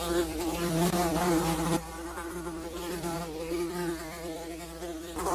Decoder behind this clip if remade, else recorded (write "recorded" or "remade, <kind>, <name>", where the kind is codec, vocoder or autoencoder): remade, vocoder, BigVGAN v2